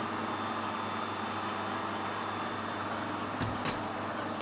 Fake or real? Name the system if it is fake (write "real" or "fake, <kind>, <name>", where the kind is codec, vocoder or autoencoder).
real